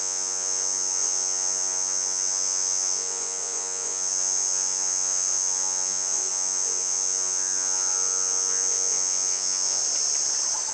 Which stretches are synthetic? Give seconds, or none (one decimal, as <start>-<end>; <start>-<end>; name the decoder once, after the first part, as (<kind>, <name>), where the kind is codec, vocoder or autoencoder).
0.0-9.8 (vocoder, Vocos)

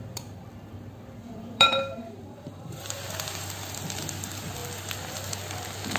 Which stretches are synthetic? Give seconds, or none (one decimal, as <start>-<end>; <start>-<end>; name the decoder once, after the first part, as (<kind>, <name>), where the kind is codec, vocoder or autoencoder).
1.2-2.9 (vocoder, BigVGAN v2)

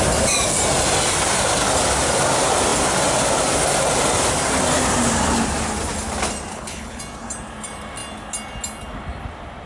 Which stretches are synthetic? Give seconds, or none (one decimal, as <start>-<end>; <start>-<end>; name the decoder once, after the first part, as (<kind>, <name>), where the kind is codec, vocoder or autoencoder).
6.5-7.0 (codec, HILCodec)

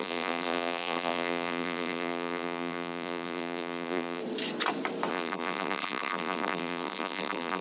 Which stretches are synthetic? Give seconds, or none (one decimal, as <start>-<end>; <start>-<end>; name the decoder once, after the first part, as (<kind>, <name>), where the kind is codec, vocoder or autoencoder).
0.0-4.2 (vocoder, BigVGAN v2); 5.1-7.6

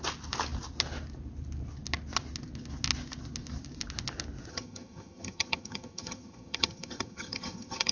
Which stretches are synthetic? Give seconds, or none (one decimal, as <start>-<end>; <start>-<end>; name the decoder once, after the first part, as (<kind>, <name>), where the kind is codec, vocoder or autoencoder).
4.5-7.9 (vocoder, HiFi-GAN)

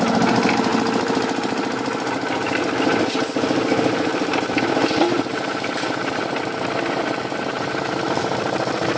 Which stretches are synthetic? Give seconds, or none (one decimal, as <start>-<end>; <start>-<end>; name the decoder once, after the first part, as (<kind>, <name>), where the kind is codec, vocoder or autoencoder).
0.7-4.6 (vocoder, BigVGAN v2)